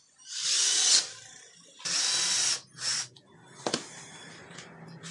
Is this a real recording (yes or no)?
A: yes